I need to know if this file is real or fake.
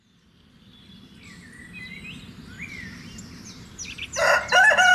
real